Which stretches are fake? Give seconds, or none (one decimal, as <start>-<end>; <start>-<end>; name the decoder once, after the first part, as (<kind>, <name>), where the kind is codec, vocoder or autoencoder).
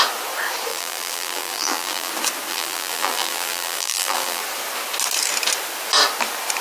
0.7-2.1 (vocoder, BigVGAN v2); 2.5-4.4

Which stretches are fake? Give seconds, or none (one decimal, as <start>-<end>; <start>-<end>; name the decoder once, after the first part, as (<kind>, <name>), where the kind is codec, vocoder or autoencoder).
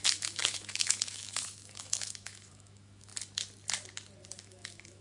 0.0-3.1 (autoencoder, DAC-VAE); 4.4-5.0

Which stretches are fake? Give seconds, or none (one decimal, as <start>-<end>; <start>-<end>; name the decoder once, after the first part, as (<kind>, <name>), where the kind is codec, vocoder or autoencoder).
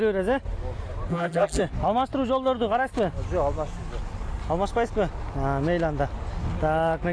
1.1-1.6 (vocoder, BigVGAN v2)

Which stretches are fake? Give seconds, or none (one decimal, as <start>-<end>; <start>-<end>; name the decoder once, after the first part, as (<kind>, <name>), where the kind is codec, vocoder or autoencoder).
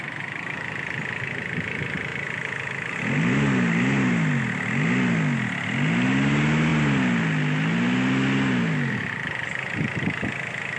none